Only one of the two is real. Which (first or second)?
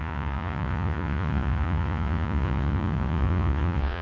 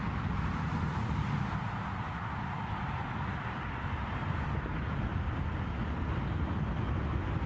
second